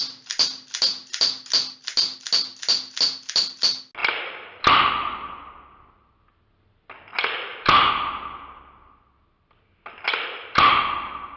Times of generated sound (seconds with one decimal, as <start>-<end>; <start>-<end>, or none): none